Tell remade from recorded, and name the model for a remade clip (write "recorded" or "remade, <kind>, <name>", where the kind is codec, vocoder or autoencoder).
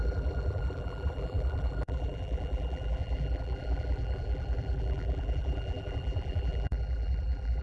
remade, vocoder, BigVGAN v2